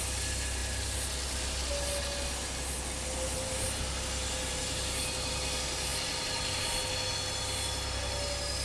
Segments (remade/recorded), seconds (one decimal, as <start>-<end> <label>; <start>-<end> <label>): 0.0-8.6 recorded